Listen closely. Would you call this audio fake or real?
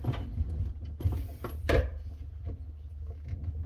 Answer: real